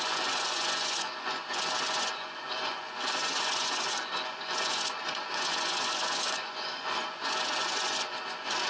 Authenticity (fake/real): fake